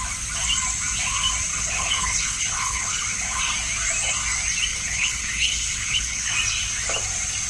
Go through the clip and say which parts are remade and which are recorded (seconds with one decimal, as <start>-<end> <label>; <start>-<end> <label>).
0.0-1.5 recorded; 1.5-3.4 remade; 3.4-4.7 recorded; 4.7-6.3 remade; 6.3-7.5 recorded